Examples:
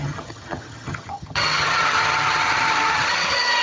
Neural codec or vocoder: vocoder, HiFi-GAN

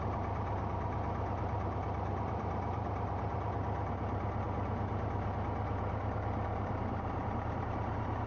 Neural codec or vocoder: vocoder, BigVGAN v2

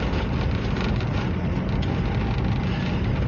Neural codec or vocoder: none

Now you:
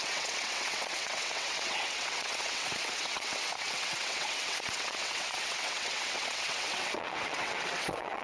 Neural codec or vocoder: vocoder, WaveNeXt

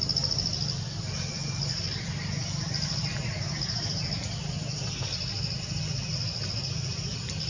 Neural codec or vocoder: none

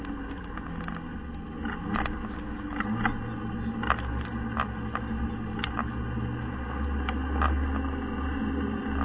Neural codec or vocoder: none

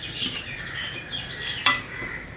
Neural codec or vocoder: none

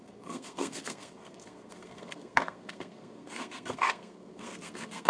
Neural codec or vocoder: codec, SNAC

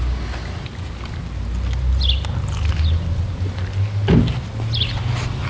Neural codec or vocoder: none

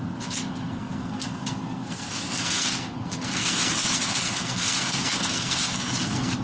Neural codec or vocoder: codec, SNAC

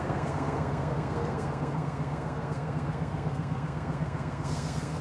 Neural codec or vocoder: codec, SNAC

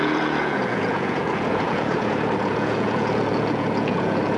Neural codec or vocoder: vocoder, Vocos